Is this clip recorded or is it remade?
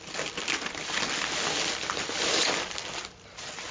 recorded